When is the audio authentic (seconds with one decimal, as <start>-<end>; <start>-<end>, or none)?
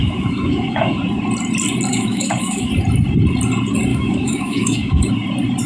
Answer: 1.0-1.9; 2.7-3.9; 5.1-5.7